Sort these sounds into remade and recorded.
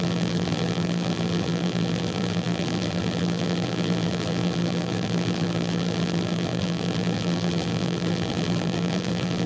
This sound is remade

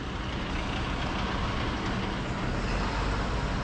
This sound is recorded